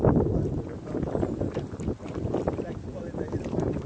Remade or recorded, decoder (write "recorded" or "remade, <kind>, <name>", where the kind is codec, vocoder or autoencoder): recorded